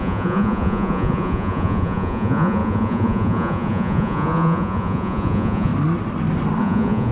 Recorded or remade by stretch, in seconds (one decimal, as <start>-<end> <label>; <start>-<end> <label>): 0.0-5.7 remade; 5.7-6.6 recorded; 6.6-7.1 remade